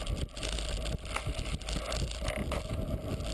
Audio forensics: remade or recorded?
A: recorded